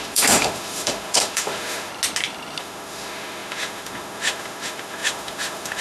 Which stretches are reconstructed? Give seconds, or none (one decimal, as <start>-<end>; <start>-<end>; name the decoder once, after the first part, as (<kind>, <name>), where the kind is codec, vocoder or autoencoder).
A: 0.0-1.9 (autoencoder, DAC-VAE); 2.6-5.8